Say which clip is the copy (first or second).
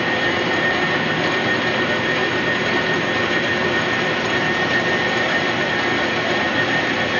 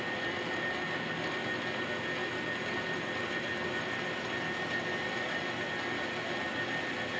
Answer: first